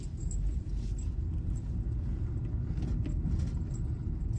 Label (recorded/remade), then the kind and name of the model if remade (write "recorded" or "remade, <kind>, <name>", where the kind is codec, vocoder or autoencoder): recorded